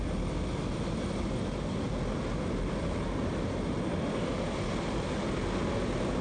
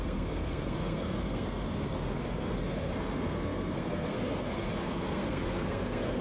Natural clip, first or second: first